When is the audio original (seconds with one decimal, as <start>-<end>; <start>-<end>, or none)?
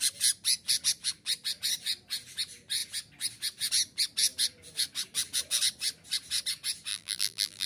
0.0-6.9